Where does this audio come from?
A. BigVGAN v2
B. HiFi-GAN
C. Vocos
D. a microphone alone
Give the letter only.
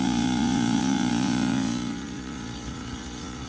C